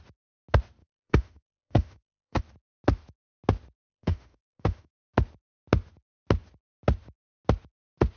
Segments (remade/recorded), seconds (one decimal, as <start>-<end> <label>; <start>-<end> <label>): 0.0-0.8 recorded; 0.8-2.4 remade; 2.4-3.9 recorded; 3.9-4.9 remade; 4.9-8.2 recorded